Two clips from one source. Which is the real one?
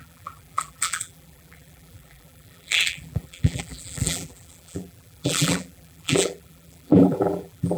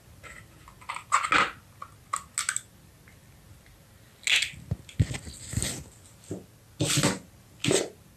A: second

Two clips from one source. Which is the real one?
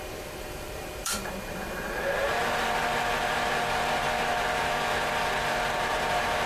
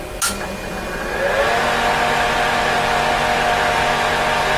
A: second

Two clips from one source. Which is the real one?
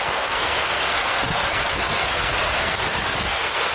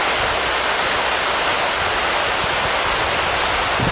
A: second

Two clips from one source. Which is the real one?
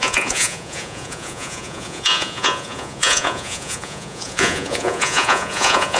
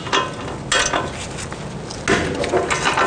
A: second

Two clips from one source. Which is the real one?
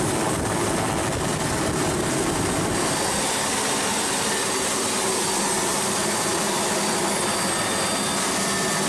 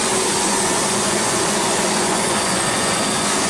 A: first